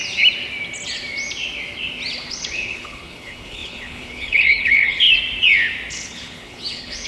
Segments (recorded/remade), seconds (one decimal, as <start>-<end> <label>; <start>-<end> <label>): 0.0-2.3 recorded; 2.3-5.1 remade; 5.1-5.9 recorded; 5.9-7.1 remade